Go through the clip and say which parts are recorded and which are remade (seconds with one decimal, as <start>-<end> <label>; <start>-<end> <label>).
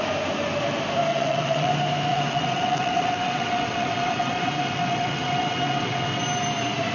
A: 0.0-1.1 recorded; 1.1-1.7 remade; 1.7-2.1 recorded; 2.1-6.2 remade; 6.2-6.9 recorded